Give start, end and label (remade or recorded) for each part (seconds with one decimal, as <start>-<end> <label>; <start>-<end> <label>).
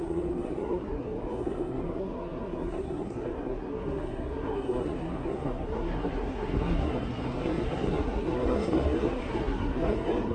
0.0-10.3 remade